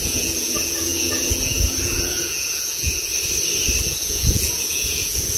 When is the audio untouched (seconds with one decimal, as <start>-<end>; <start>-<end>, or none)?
3.1-3.8